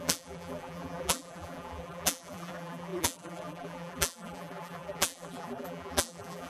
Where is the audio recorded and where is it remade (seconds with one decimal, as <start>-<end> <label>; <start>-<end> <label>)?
0.0-6.5 remade